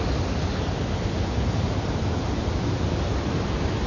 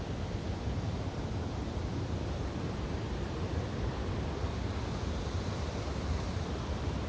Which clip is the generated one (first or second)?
second